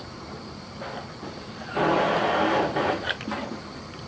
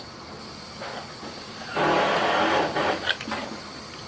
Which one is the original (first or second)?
second